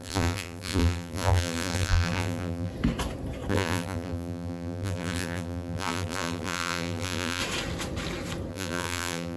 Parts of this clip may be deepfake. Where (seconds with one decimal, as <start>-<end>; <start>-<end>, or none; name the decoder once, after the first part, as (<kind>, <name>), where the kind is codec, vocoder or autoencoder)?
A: 0.0-2.7 (vocoder, BigVGAN v2); 3.5-7.4; 8.5-9.4